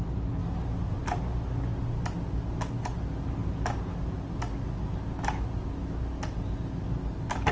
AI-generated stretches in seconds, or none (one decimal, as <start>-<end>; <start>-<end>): none